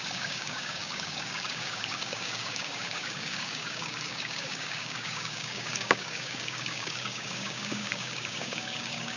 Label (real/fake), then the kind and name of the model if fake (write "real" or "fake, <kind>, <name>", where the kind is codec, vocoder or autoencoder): fake, codec, DAC